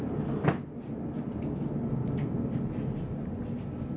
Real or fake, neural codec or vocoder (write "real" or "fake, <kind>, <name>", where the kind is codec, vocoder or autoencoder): real